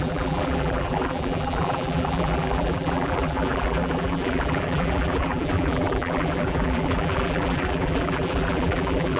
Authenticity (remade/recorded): remade